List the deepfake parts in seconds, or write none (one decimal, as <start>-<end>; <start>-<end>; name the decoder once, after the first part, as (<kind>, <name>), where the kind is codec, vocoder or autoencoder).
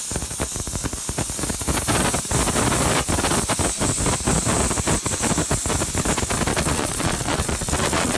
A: 6.5-8.2 (vocoder, Vocos)